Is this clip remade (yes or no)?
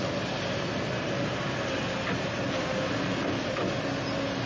no